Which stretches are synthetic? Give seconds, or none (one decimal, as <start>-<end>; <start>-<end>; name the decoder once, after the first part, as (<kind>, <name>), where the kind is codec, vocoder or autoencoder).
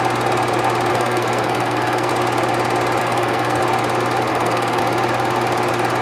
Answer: 0.9-2.1 (codec, SNAC); 3.0-3.6; 4.3-4.8